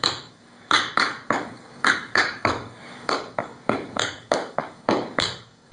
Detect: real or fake fake